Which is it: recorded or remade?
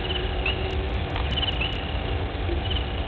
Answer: recorded